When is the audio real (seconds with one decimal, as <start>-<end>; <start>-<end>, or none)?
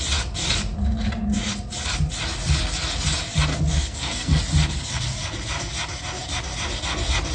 0.0-3.5; 4.4-7.3